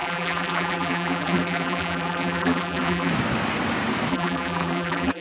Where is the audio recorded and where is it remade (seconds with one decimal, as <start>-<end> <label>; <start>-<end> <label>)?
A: 0.0-3.1 remade; 3.1-4.1 recorded; 4.1-5.2 remade